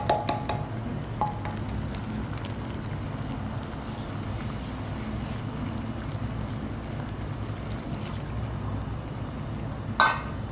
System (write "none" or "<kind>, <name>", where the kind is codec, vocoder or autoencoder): none